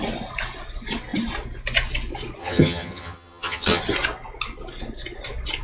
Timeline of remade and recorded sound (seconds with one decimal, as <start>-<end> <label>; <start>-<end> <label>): 0.0-2.4 recorded; 2.4-3.8 remade; 3.8-5.6 recorded

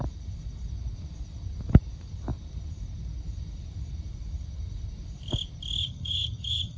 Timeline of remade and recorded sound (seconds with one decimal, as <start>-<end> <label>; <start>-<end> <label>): 0.0-5.8 recorded; 5.8-6.8 remade

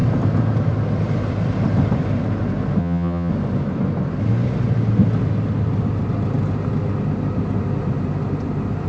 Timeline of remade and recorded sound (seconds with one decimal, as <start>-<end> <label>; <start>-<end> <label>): 0.0-2.8 recorded; 2.8-3.3 remade; 3.3-8.9 recorded

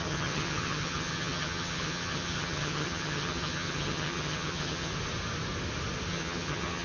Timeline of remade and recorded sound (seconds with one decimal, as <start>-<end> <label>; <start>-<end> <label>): 0.0-4.9 remade; 4.9-6.1 recorded; 6.1-6.8 remade